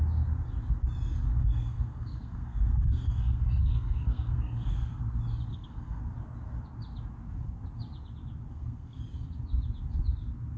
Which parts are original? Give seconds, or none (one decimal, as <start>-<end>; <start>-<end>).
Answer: 0.0-1.4; 5.0-5.5; 6.0-8.5; 9.0-10.6